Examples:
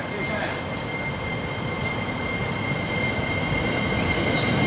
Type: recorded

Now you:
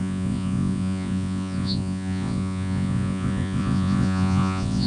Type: remade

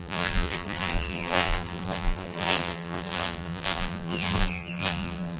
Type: remade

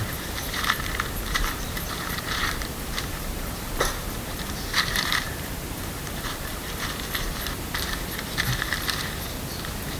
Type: remade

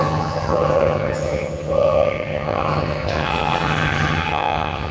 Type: remade